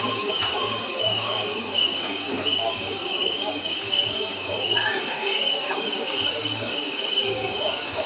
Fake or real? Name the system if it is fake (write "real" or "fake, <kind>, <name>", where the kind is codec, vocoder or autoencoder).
fake, codec, DAC